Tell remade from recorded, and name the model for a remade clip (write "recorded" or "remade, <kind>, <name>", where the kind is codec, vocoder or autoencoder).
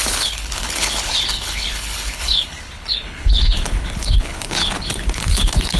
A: remade, codec, HILCodec